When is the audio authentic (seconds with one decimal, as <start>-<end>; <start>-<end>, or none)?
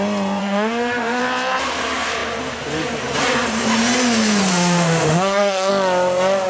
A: 0.0-0.4; 1.2-4.5; 5.7-6.5